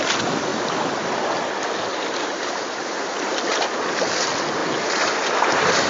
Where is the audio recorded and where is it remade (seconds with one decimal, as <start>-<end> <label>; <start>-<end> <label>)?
0.0-0.5 recorded; 0.5-1.2 remade; 1.2-1.9 recorded; 1.9-3.1 remade; 3.1-4.6 recorded; 4.6-5.9 remade